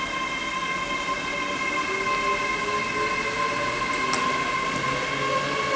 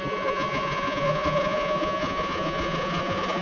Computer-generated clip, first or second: second